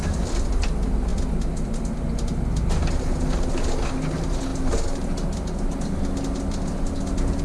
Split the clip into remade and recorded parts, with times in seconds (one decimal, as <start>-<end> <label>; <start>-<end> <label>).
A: 0.0-7.4 recorded

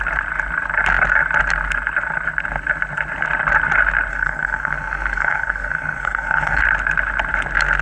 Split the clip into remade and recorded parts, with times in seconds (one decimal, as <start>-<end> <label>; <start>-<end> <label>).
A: 0.0-4.1 recorded; 4.1-6.6 remade; 6.6-7.8 recorded

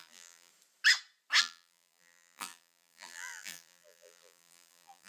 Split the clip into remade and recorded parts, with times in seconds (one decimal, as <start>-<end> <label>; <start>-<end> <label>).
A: 0.0-0.5 remade; 0.5-1.4 recorded; 1.4-5.1 remade